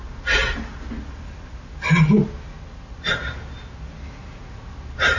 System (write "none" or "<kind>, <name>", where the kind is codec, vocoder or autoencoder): none